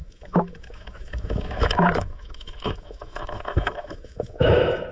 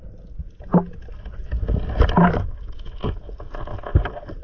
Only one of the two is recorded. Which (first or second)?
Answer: second